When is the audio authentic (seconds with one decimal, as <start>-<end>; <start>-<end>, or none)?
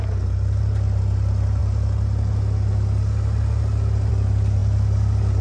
0.0-5.4